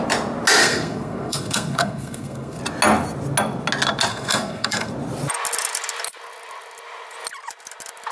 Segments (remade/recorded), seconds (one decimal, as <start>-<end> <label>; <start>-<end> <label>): 0.0-0.6 recorded; 0.6-2.6 remade; 2.6-4.1 recorded; 4.1-4.9 remade; 4.9-8.1 recorded